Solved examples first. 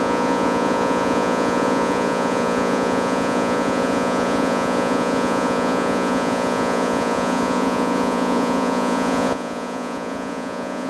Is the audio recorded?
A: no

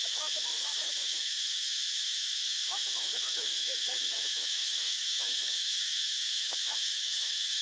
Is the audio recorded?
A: no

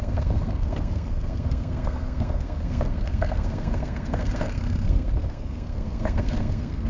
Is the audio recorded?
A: no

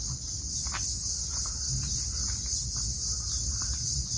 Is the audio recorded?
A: yes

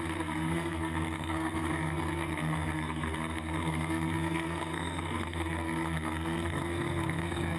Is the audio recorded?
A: no